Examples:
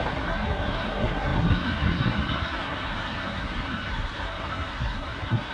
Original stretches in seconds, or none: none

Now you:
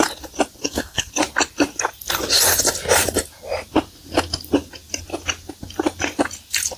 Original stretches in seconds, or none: 0.0-0.6; 1.1-6.8

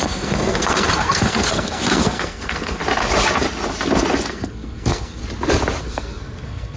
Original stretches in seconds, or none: 2.8-4.3; 5.2-5.8